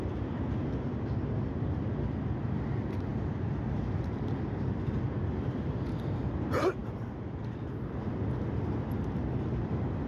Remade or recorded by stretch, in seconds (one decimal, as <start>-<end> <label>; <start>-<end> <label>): 0.0-10.1 recorded